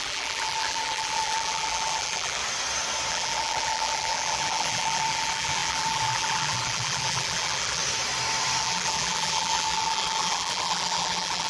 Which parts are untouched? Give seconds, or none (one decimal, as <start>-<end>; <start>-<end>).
2.4-3.1; 7.8-8.6